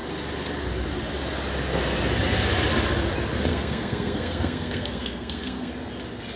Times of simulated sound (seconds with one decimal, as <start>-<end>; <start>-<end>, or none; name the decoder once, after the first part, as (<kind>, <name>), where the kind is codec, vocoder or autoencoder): 3.5-5.7 (codec, SNAC)